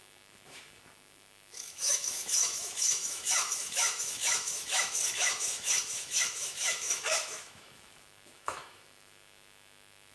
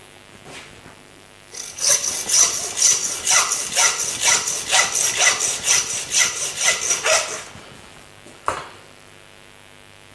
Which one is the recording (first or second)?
second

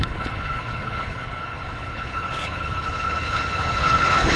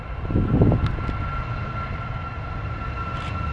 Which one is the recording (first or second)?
second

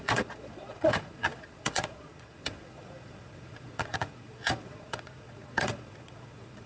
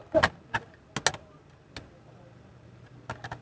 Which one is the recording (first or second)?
second